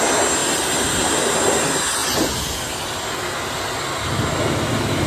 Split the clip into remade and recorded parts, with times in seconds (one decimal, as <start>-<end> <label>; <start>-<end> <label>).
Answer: 0.0-5.1 recorded